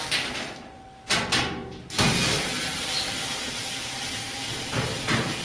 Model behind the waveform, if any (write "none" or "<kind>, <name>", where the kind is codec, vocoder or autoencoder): none